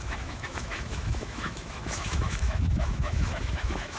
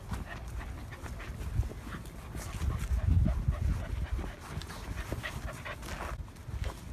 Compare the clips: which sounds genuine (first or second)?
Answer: second